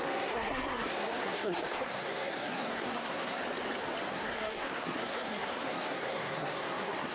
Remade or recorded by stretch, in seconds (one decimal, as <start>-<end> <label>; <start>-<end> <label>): 0.0-3.4 remade; 3.4-4.1 recorded; 4.1-7.1 remade

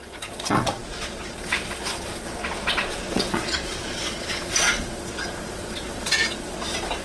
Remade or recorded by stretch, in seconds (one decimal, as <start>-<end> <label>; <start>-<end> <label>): 0.0-7.0 remade